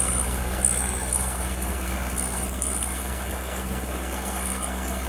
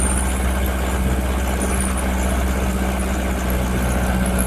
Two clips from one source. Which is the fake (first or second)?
first